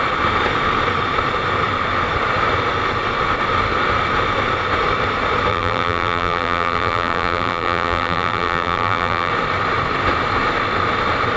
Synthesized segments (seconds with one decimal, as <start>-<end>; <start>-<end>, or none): 5.5-9.3

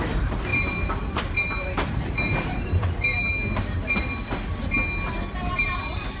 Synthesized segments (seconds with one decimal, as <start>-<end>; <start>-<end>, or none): 0.0-3.3; 5.5-6.2